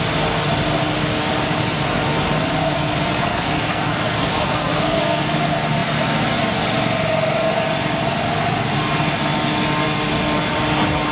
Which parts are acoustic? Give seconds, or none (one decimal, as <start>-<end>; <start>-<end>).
0.0-2.6; 5.2-11.1